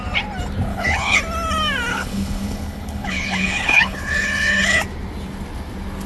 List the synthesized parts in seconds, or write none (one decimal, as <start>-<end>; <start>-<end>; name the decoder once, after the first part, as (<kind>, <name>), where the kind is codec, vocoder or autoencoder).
0.7-1.2 (codec, HILCodec); 1.9-4.8